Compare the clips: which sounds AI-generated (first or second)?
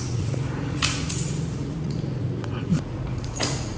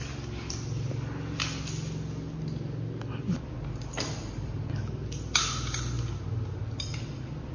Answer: first